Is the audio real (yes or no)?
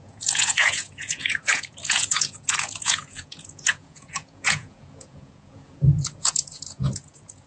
no